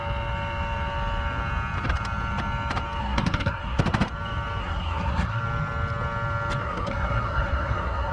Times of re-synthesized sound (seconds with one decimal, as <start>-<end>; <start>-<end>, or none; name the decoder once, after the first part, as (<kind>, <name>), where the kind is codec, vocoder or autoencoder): 3.0-3.8 (codec, SNAC); 4.6-5.4; 6.6-8.1